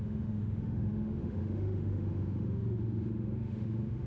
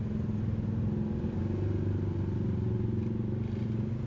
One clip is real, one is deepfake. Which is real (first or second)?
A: second